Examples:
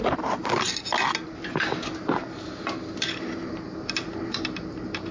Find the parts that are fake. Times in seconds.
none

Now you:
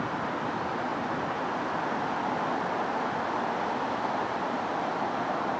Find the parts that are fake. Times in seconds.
none

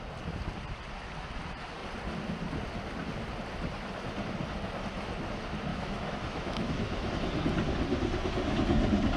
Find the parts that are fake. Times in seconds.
5.7-7.1

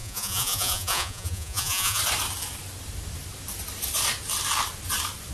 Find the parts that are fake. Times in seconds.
0.0-2.0

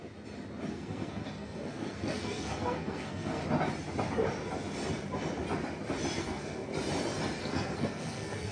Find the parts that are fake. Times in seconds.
0.7-3.4; 6.2-6.7; 7.4-8.5

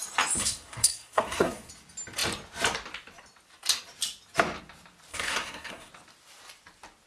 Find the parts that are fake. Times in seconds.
0.4-1.7; 5.1-5.9

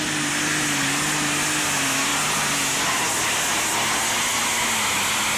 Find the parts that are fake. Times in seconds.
none

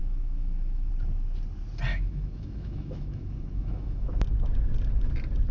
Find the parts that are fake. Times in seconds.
0.0-0.9; 1.9-4.1